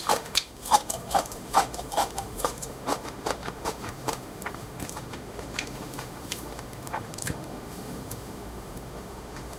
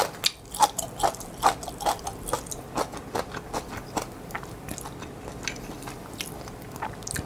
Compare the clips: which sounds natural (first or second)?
second